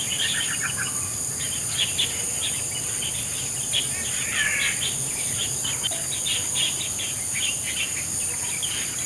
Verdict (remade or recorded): recorded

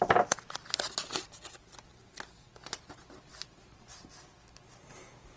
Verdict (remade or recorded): recorded